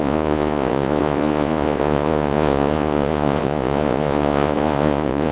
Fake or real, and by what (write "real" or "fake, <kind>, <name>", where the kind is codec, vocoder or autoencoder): fake, vocoder, Vocos